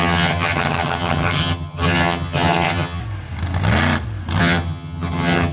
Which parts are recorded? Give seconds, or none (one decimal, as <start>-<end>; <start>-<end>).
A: 3.0-4.4